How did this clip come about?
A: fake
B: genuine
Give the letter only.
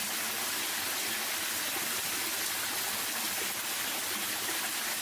B